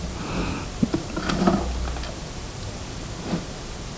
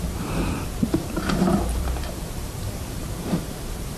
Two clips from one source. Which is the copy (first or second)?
second